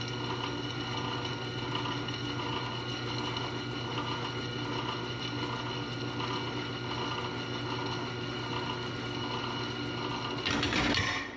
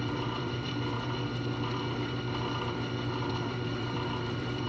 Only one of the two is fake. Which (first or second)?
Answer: second